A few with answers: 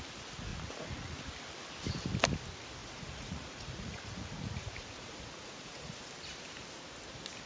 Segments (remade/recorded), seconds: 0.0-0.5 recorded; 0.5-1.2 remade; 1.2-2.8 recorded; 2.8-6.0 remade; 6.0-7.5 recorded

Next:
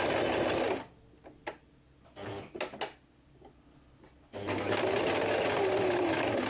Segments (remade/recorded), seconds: 0.0-6.5 recorded